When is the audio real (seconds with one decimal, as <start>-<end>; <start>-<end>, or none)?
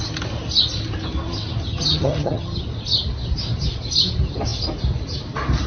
0.0-1.7; 2.6-5.7